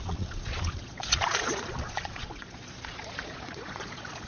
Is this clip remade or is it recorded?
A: remade